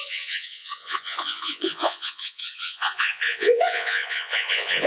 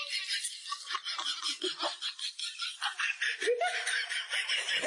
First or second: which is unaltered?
second